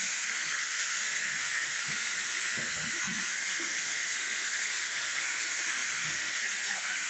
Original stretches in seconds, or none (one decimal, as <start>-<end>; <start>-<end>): none